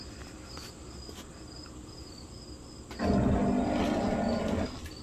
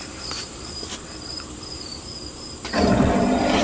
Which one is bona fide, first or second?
first